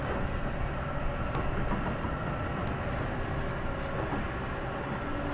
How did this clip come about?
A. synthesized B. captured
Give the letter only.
B